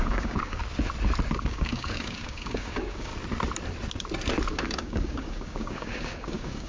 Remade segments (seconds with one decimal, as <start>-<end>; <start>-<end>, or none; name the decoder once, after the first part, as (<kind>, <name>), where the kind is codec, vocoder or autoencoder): 0.0-0.6 (codec, DAC); 1.4-3.1; 4.5-6.7